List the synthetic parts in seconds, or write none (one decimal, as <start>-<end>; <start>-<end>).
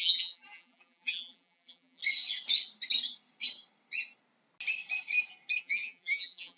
0.0-2.0; 5.6-6.6